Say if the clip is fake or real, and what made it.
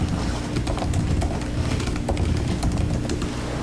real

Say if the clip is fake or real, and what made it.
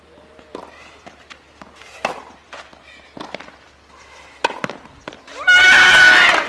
real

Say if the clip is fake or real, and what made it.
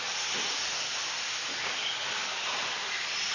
real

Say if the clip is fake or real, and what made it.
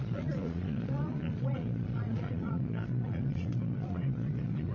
fake, vocoder, Vocos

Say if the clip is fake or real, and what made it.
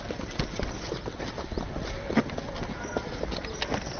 real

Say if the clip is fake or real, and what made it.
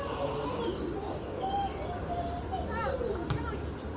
real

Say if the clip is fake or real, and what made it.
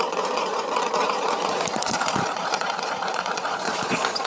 fake, vocoder, Vocos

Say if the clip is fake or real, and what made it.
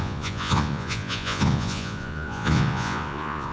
fake, vocoder, Vocos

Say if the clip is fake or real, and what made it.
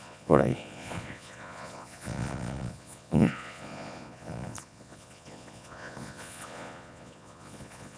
fake, vocoder, Vocos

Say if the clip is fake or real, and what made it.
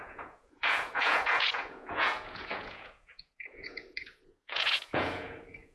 fake, vocoder, Vocos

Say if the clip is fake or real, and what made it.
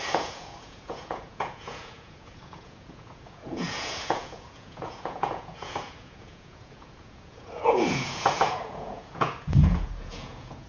fake, vocoder, Vocos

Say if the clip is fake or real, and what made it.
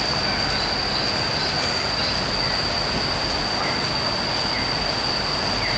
real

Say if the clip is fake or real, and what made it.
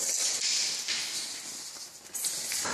real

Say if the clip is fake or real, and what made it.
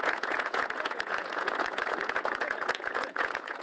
fake, vocoder, Vocos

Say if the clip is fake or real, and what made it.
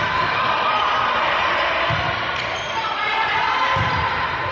real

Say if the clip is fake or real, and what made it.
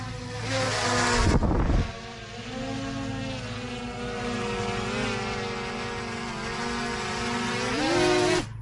real